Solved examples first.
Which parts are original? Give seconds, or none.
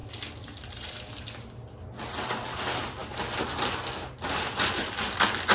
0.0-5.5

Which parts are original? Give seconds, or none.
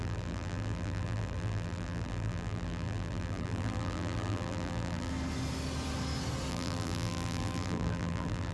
5.1-6.5